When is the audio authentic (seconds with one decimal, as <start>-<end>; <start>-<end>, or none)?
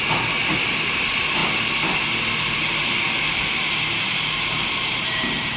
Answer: 1.4-4.3